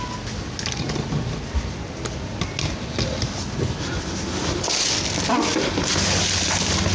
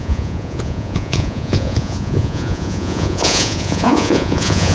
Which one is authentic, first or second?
first